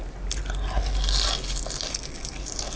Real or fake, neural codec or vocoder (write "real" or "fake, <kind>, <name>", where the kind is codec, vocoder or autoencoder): real